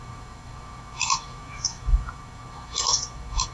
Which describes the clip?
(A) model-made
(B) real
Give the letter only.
A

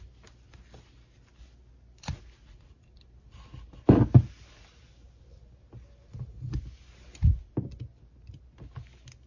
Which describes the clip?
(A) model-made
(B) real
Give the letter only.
B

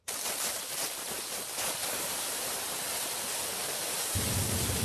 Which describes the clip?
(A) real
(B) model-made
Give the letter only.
A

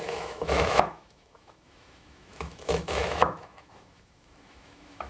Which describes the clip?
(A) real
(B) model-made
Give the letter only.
B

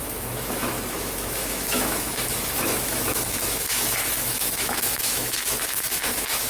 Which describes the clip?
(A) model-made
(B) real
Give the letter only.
A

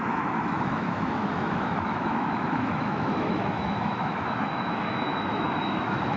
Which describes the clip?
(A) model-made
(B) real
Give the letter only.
A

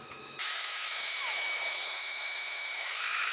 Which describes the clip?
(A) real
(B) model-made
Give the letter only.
B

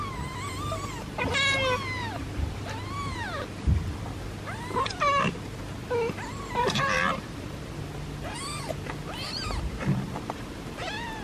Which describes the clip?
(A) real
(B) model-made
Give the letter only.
A